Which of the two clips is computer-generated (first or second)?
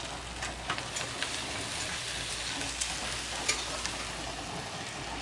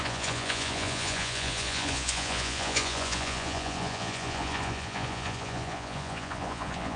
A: second